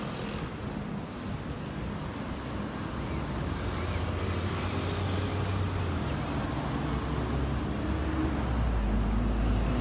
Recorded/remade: recorded